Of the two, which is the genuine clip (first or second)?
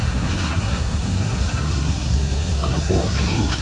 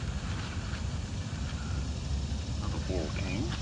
second